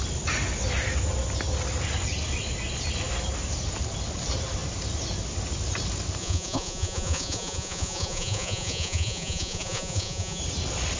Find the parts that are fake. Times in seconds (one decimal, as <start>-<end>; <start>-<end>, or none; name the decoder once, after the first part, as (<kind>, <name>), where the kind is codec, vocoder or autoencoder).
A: 6.2-10.4 (vocoder, Vocos)